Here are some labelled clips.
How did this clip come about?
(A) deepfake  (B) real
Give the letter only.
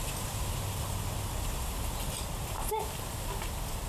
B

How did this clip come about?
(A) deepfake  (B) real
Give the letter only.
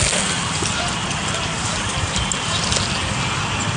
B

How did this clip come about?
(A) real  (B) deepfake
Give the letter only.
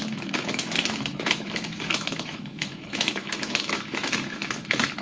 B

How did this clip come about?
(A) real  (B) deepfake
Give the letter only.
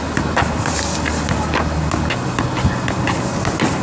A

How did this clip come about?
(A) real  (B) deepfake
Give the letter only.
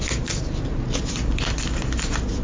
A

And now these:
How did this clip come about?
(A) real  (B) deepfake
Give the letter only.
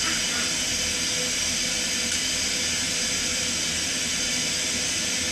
A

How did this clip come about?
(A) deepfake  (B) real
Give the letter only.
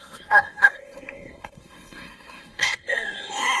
A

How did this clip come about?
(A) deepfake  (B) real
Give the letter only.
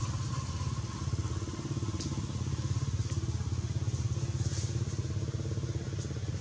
B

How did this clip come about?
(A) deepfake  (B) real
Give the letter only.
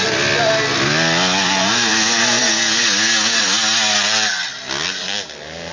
B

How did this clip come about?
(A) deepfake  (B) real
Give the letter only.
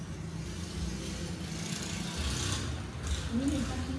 B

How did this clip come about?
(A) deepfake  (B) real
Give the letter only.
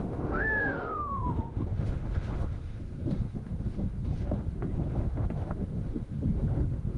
A